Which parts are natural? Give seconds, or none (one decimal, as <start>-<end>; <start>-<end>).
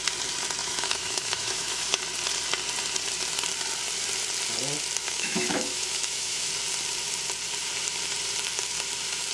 0.0-0.6; 2.0-5.0; 6.5-9.3